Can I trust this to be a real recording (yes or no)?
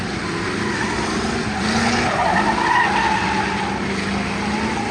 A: yes